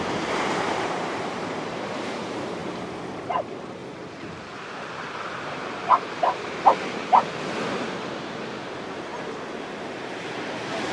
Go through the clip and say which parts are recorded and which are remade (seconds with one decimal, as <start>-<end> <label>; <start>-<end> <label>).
0.0-3.8 remade; 3.8-5.0 recorded; 5.0-9.1 remade; 9.1-9.6 recorded; 9.6-10.9 remade